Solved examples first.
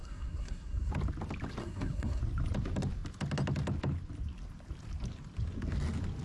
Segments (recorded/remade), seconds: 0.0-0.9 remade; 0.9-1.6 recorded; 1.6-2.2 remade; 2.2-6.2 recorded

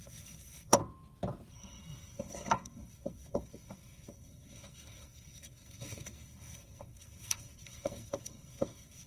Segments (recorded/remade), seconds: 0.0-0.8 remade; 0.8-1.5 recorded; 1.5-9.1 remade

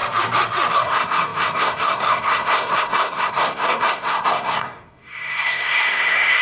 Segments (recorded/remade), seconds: 0.0-0.7 recorded; 0.7-6.4 remade

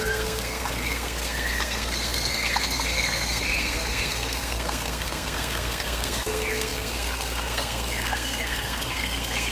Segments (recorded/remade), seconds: 0.0-9.5 remade

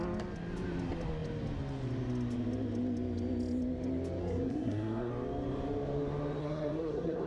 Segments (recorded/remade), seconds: 0.0-4.2 recorded; 4.2-5.1 remade; 5.1-6.4 recorded; 6.4-7.3 remade

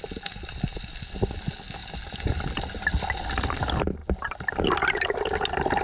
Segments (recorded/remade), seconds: 0.0-5.8 recorded

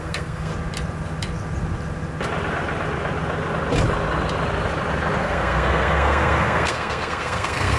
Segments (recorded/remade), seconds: 0.0-0.5 remade; 0.5-5.2 recorded; 5.2-7.8 remade